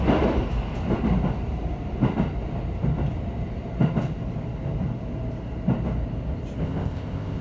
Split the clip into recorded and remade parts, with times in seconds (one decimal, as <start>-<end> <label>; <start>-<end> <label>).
0.0-6.6 recorded; 6.6-7.4 remade